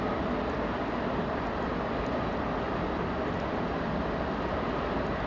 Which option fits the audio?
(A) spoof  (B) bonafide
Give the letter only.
B